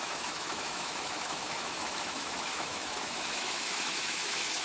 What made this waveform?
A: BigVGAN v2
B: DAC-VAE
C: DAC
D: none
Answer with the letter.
B